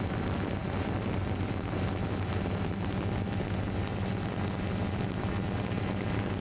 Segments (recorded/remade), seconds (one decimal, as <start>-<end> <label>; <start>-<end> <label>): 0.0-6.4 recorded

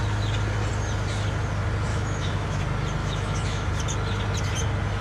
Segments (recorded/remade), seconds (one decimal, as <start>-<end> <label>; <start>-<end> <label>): 0.0-1.9 recorded; 1.9-2.6 remade; 2.6-3.0 recorded; 3.0-3.7 remade; 3.7-5.0 recorded

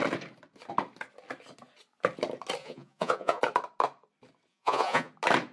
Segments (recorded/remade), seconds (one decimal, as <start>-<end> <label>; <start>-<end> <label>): 0.0-2.6 recorded; 2.6-3.4 remade; 3.4-4.5 recorded; 4.5-5.1 remade; 5.1-5.5 recorded

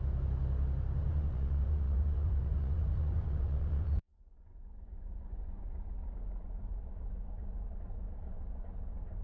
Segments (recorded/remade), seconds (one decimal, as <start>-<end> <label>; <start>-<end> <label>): 0.0-1.0 recorded; 1.0-5.7 remade; 5.7-9.2 recorded

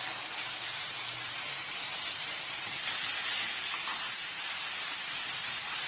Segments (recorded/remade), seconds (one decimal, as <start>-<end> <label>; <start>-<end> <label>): 0.0-0.8 recorded; 0.8-3.3 remade; 3.3-3.9 recorded; 3.9-5.9 remade

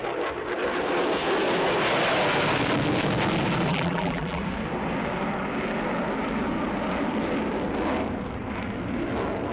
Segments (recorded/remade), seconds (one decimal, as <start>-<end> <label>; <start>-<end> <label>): 0.0-3.7 recorded; 3.7-4.4 remade; 4.4-9.5 recorded